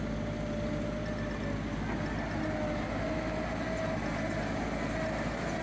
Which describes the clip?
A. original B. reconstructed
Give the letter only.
A